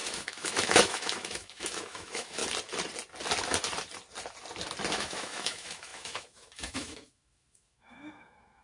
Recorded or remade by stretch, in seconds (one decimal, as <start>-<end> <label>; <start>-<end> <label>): 0.0-2.4 remade; 2.4-4.9 recorded; 4.9-8.6 remade